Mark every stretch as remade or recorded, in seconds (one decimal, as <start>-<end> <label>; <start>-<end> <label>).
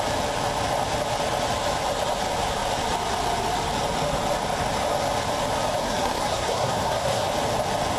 0.0-5.8 recorded; 5.8-7.3 remade; 7.3-8.0 recorded